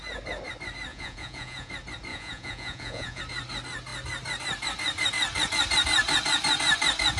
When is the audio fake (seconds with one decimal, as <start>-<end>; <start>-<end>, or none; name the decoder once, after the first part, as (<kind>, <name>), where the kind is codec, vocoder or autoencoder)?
0.9-1.7 (vocoder, Vocos); 2.1-3.2